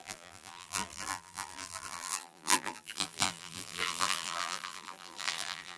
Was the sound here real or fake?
fake